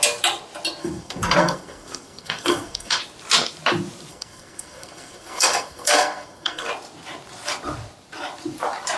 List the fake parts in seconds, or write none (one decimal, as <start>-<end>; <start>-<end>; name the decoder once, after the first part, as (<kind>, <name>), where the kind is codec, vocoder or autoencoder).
0.8-3.0 (codec, SNAC); 4.1-6.7